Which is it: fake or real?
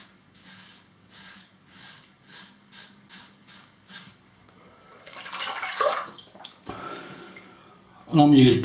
fake